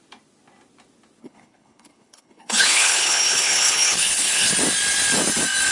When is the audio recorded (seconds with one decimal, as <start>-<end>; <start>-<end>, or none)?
0.0-1.2; 4.5-5.7